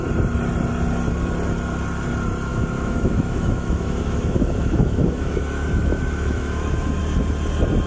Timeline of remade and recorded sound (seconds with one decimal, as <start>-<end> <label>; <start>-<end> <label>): 0.0-2.5 recorded; 2.5-7.0 remade; 7.0-7.9 recorded